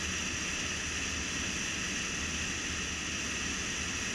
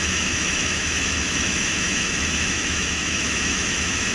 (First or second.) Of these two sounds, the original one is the first